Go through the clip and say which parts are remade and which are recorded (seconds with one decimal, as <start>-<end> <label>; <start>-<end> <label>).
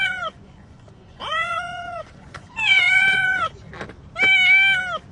0.0-3.7 remade; 3.7-5.1 recorded